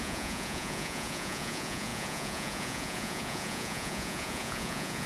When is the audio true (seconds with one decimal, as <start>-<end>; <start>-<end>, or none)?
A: none